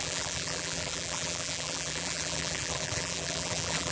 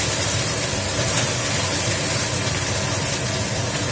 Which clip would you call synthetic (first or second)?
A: first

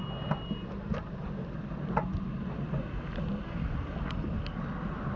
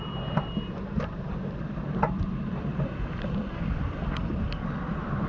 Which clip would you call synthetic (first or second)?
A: second